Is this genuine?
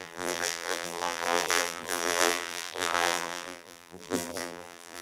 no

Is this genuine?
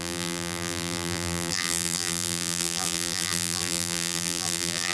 no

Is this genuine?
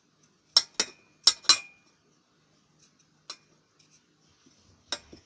yes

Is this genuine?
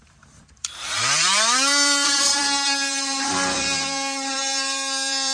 no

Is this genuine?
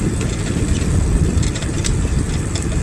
no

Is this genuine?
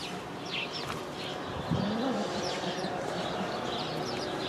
no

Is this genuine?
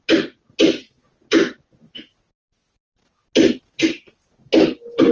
yes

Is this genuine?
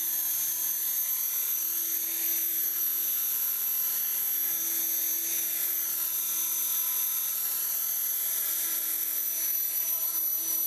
yes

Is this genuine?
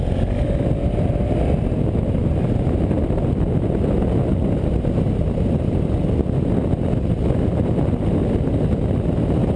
yes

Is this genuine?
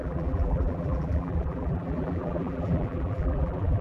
no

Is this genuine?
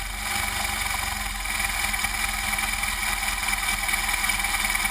yes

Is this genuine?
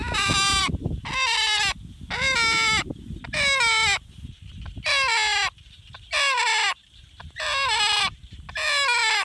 yes